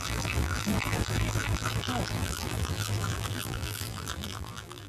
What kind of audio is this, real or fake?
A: fake